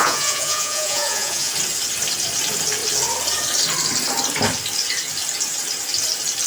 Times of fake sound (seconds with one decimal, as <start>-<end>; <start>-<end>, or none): 0.0-1.5